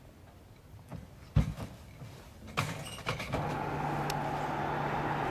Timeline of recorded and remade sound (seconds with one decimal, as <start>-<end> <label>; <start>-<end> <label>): 0.0-5.3 recorded